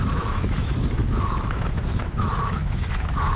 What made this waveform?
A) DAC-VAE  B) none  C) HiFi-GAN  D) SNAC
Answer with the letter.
A